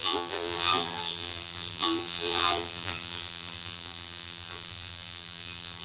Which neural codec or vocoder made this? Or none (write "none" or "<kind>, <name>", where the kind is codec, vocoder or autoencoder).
vocoder, BigVGAN v2